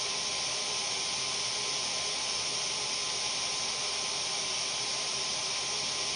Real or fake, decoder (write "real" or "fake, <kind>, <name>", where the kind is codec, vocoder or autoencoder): real